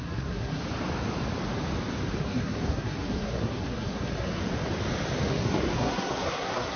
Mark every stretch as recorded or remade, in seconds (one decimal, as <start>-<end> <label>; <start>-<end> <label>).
0.0-0.6 remade; 0.6-2.2 recorded; 2.2-4.4 remade; 4.4-5.3 recorded; 5.3-6.8 remade